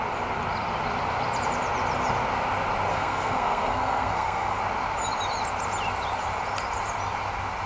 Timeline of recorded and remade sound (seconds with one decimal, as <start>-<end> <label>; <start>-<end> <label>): 0.0-2.9 recorded; 2.9-4.6 remade; 4.6-7.7 recorded